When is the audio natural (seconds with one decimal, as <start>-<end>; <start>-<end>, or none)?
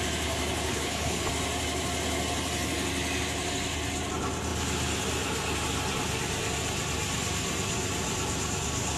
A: 0.0-0.7; 1.3-9.0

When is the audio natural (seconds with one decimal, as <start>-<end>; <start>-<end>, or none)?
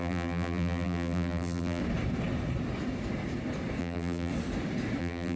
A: 1.8-3.8; 4.3-5.0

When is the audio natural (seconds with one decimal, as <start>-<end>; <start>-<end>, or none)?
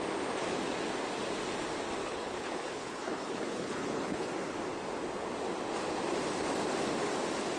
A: 0.0-2.0; 4.3-7.6